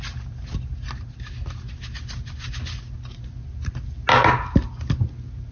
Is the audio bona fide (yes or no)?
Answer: yes